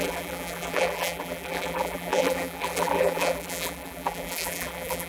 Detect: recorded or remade remade